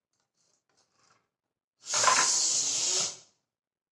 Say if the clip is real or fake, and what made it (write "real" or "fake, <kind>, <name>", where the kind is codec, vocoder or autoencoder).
real